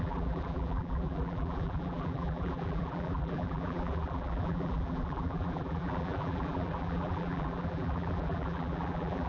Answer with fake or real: fake